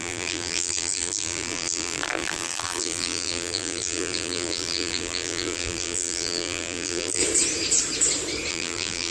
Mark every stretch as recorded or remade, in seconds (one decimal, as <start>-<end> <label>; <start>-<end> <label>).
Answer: 0.0-7.2 remade; 7.2-8.5 recorded; 8.5-9.1 remade